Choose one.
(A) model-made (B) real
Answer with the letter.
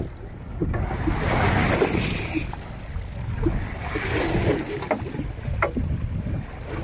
B